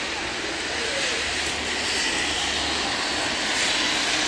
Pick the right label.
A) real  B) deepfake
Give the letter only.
A